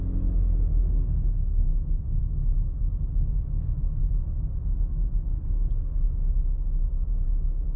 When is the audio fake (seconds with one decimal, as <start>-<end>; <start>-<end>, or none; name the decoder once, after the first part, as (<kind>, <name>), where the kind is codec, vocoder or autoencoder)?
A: 0.8-2.2 (codec, SNAC)